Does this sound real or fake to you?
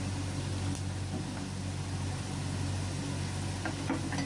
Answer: real